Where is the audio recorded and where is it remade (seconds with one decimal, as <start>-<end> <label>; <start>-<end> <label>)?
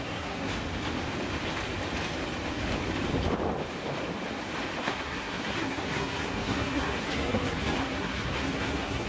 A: 0.0-0.5 remade; 0.5-4.8 recorded; 4.8-9.1 remade